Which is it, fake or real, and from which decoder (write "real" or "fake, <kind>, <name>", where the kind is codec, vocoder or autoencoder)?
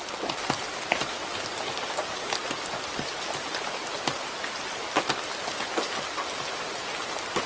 real